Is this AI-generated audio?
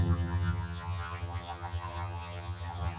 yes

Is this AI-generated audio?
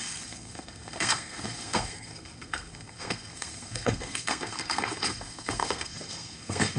yes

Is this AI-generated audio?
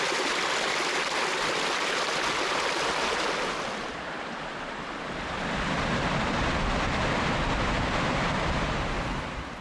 no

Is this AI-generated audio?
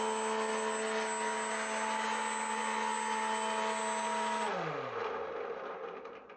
no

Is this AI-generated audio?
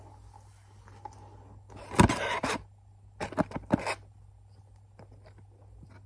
no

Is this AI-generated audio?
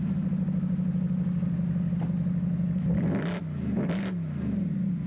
no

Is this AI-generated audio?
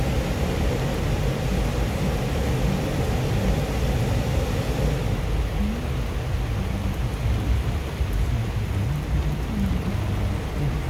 no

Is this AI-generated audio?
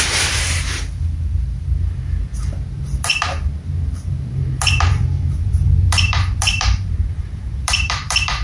yes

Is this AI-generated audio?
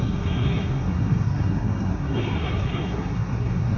yes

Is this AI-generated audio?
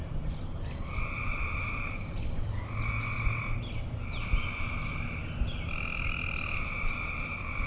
no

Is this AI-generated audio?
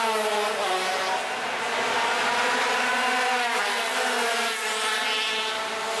no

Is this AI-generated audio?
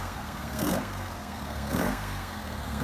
yes